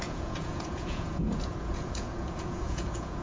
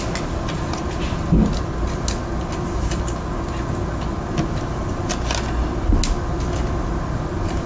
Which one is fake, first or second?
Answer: first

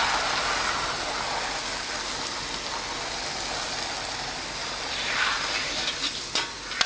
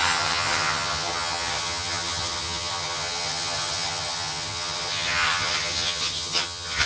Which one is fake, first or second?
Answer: second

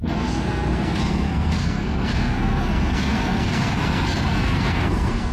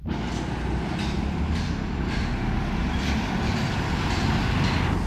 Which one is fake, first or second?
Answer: first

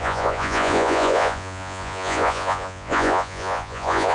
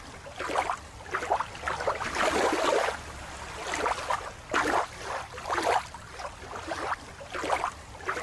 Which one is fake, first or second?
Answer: first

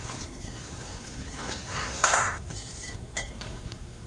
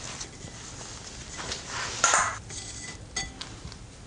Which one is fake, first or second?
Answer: first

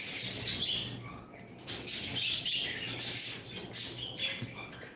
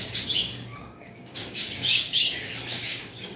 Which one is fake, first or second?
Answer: second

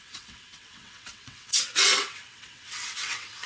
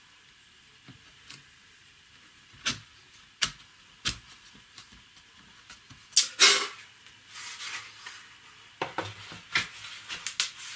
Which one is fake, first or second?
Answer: first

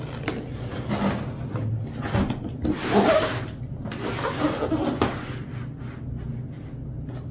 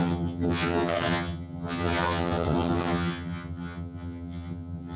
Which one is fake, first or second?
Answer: second